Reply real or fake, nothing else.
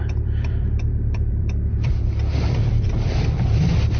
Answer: fake